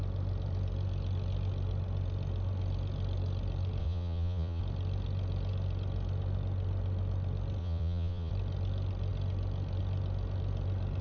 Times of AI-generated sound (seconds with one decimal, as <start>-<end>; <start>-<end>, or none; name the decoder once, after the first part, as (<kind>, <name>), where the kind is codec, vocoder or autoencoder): 3.8-4.6 (vocoder, Vocos); 7.6-8.3